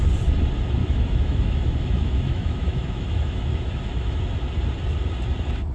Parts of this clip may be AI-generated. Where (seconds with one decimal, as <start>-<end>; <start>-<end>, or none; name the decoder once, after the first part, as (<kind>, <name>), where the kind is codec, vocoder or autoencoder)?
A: 0.8-4.2 (autoencoder, DAC-VAE)